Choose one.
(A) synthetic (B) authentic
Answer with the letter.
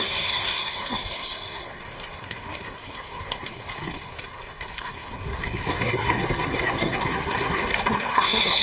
A